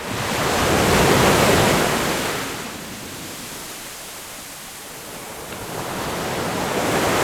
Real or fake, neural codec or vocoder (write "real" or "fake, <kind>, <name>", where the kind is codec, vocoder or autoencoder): real